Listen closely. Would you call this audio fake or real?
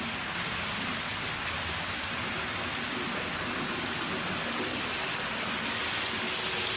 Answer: real